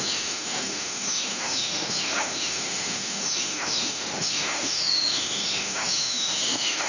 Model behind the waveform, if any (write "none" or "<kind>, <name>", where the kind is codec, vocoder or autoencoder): autoencoder, DAC-VAE